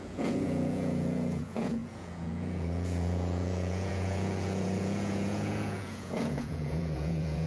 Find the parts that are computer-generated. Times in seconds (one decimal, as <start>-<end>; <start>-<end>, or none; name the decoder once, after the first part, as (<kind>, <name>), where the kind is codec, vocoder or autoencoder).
0.0-7.5 (vocoder, Vocos)